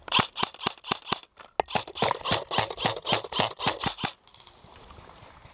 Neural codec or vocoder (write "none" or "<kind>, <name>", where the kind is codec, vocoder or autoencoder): none